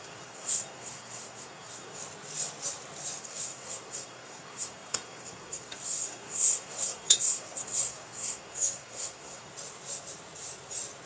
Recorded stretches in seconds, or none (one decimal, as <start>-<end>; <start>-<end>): 2.0-3.2; 9.5-11.1